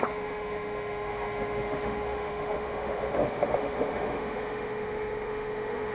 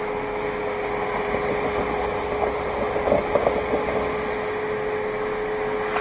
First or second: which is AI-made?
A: first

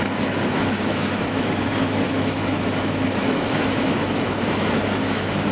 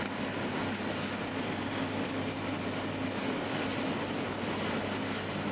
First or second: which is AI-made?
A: first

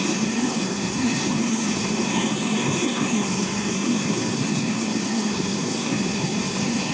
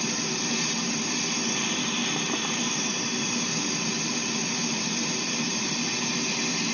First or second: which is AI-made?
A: first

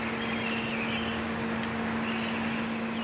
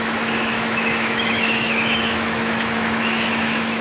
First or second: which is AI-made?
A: second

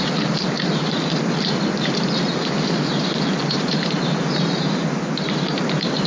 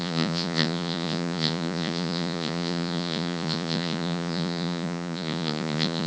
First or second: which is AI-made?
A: second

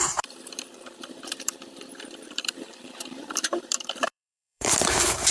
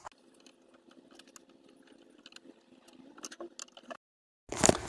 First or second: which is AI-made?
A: first